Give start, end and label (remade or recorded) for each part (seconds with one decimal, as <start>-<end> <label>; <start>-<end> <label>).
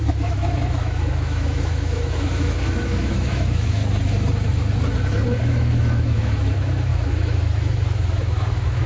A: 0.0-3.8 remade; 3.8-5.4 recorded; 5.4-8.9 remade